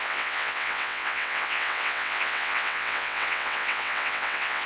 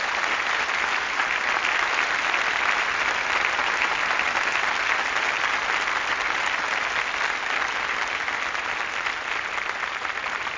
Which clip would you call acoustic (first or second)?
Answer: second